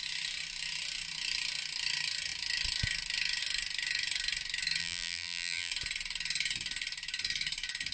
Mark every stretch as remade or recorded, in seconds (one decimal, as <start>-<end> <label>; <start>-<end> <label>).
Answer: 0.0-4.8 recorded; 4.8-5.7 remade; 5.7-7.9 recorded